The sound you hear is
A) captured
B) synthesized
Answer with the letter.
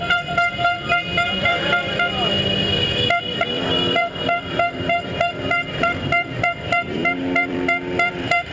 B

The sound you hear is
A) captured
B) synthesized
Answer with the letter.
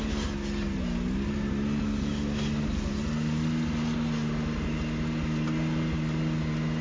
A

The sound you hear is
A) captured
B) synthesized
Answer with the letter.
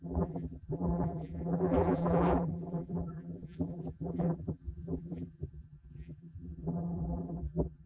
B